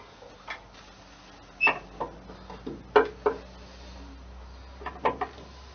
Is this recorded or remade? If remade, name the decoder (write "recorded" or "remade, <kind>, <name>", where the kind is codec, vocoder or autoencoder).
recorded